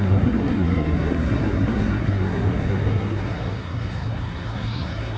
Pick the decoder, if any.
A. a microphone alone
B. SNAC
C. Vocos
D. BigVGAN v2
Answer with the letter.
B